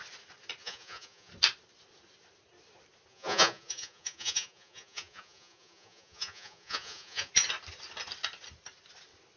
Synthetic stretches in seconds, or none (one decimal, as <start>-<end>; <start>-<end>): 0.6-1.3; 3.1-7.3